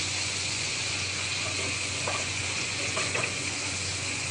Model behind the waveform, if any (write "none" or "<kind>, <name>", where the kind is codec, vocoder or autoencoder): vocoder, Vocos